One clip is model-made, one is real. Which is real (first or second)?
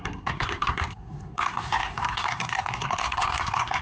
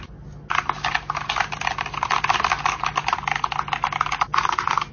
second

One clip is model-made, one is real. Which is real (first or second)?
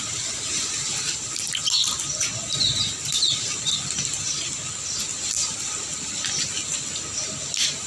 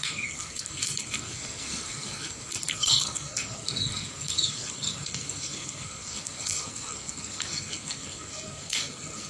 first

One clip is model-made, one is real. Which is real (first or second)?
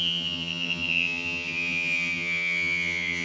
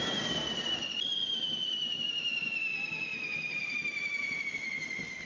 second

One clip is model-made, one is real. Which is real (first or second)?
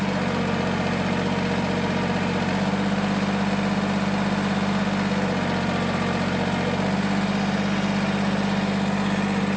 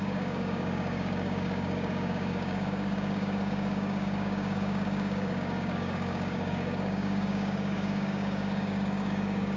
first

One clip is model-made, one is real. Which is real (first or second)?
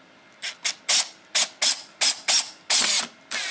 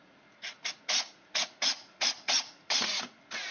first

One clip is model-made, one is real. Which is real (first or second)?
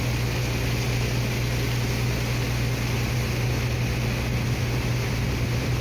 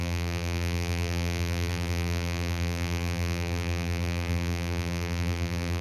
first